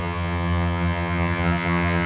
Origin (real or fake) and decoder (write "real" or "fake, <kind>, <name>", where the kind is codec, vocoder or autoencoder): fake, vocoder, HiFi-GAN